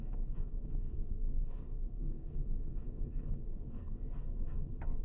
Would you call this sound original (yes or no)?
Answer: no